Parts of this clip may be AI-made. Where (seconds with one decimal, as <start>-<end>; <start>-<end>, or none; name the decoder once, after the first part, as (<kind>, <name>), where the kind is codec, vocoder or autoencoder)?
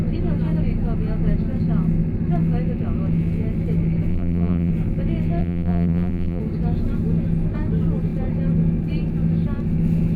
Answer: 4.1-4.7 (vocoder, BigVGAN v2); 5.4-6.4